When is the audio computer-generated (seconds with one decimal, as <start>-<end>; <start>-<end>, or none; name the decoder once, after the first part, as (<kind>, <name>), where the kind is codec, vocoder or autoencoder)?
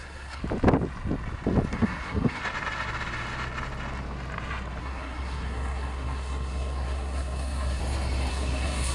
0.0-0.4 (codec, SNAC); 1.7-2.4; 4.8-7.8; 8.3-8.9